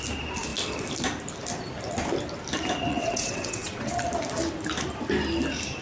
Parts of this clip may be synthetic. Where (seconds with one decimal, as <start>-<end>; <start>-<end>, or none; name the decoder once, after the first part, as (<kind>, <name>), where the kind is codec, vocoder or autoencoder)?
2.9-3.9 (vocoder, WaveNeXt)